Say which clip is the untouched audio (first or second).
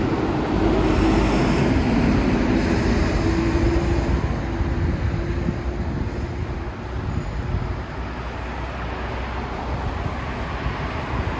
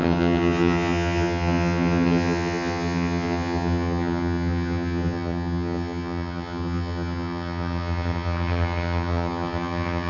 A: first